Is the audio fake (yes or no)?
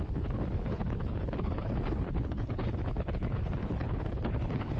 yes